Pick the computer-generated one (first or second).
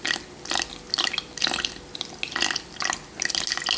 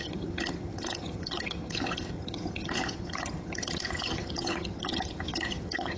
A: second